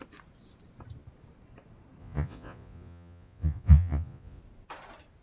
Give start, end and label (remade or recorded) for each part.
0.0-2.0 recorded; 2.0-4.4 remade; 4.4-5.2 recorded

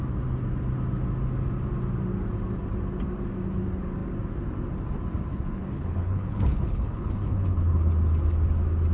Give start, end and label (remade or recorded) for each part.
0.0-5.3 recorded; 5.3-7.9 remade; 7.9-8.9 recorded

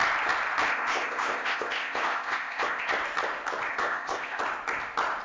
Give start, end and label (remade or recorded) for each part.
0.0-0.7 recorded; 0.7-2.9 remade; 2.9-3.7 recorded; 3.7-4.4 remade; 4.4-5.2 recorded

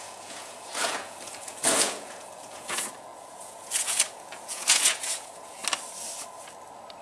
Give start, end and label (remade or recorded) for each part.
0.0-5.6 remade; 5.6-7.0 recorded